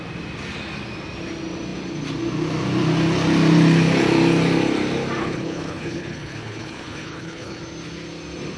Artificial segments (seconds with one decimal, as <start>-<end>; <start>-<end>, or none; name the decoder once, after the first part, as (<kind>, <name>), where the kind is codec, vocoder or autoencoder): 5.2-7.6 (codec, HILCodec)